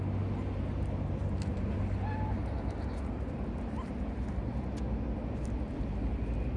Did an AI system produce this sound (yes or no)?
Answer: no